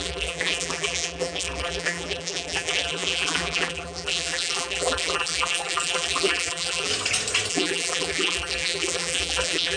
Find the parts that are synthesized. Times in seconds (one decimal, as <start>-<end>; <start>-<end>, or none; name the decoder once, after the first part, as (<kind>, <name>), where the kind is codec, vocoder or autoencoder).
0.0-6.9 (vocoder, BigVGAN v2); 7.5-9.8